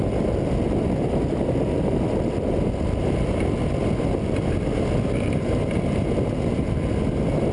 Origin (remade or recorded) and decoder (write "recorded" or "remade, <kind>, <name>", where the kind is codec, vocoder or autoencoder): recorded